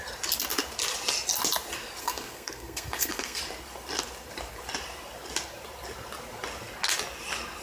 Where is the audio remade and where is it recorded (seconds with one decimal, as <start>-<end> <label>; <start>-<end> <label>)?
0.0-2.0 recorded; 2.0-3.4 remade; 3.4-7.6 recorded